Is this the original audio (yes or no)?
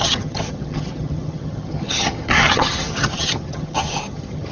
no